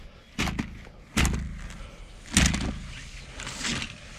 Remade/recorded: recorded